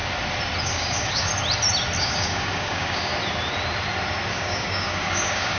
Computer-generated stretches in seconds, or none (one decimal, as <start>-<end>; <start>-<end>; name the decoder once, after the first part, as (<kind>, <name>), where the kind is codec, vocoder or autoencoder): 0.6-1.3 (codec, DAC); 2.0-3.1; 4.3-5.6